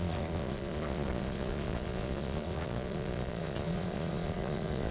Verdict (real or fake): fake